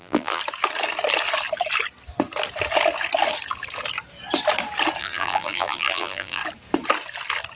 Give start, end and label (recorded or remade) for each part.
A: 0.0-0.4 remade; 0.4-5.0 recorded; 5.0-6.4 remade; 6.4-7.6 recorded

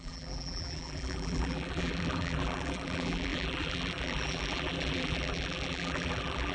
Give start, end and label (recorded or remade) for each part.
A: 0.0-6.5 remade

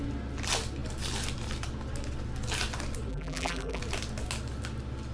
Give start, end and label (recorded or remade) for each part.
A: 0.0-3.1 recorded; 3.1-3.8 remade; 3.8-5.1 recorded

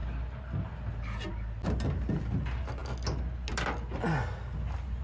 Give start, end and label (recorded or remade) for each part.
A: 0.0-5.0 recorded

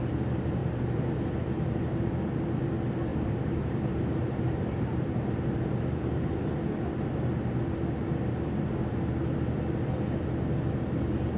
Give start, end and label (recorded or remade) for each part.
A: 0.0-0.6 recorded; 0.6-2.1 remade; 2.1-3.1 recorded; 3.1-6.3 remade; 6.3-11.4 recorded